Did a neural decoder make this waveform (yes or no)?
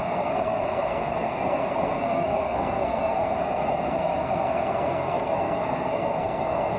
yes